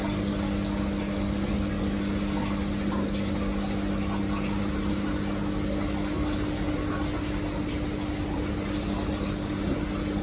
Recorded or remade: recorded